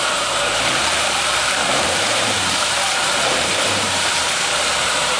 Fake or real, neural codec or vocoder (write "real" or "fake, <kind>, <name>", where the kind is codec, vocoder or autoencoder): fake, vocoder, BigVGAN v2